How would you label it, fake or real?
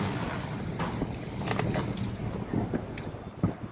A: real